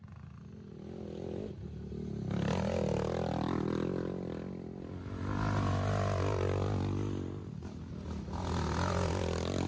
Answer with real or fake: real